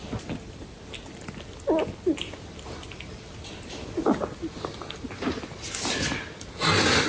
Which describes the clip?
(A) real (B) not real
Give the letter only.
A